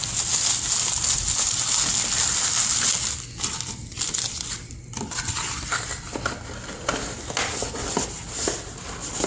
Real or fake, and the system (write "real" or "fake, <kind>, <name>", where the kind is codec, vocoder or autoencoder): real